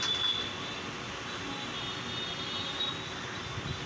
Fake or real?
real